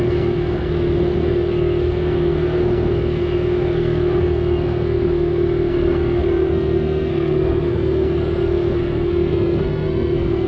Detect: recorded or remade remade